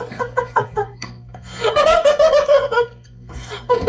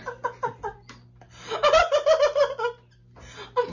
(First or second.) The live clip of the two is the second